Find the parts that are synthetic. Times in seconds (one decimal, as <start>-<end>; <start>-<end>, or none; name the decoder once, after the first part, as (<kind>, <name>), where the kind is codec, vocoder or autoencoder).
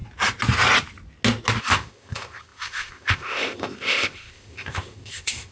1.6-5.5 (codec, ZipCodec)